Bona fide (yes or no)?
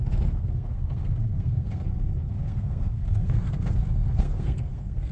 no